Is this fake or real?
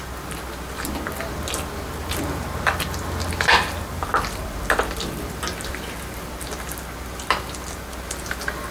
real